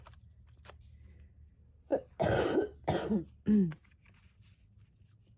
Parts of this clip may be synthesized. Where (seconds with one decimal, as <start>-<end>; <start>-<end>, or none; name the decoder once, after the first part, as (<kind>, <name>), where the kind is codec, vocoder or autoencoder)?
none